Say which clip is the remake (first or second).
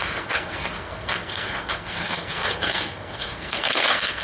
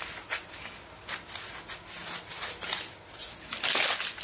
first